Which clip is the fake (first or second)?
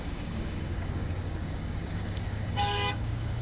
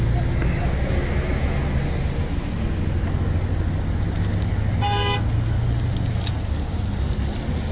first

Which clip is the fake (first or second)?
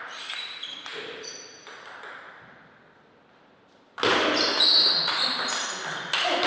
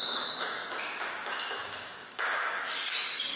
second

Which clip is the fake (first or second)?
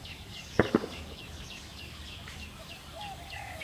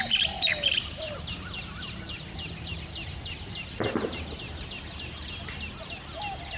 first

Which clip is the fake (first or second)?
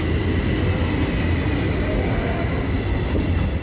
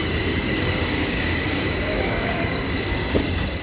second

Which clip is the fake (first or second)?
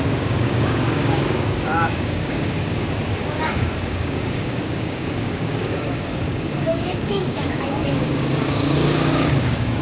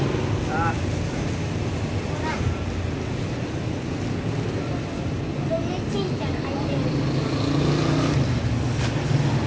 first